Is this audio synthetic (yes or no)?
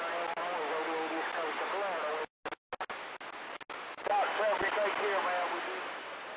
no